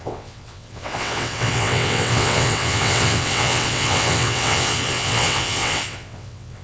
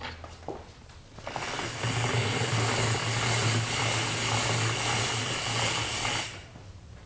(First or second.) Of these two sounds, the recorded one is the second